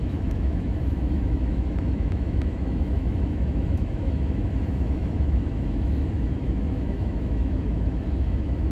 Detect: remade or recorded remade